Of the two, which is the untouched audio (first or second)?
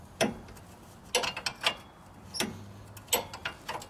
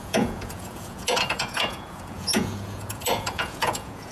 first